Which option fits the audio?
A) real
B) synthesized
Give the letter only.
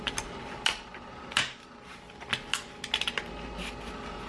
A